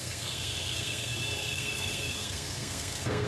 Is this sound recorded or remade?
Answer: remade